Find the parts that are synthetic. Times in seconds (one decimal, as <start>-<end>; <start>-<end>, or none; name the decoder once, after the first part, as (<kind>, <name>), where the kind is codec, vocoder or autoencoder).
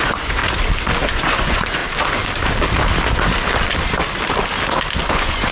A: 0.0-0.4 (vocoder, Vocos); 1.1-1.8; 5.1-5.5